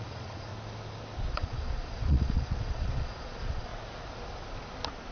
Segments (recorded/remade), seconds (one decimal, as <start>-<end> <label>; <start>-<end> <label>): 0.0-0.5 remade; 0.5-1.3 recorded; 1.3-3.7 remade; 3.7-5.1 recorded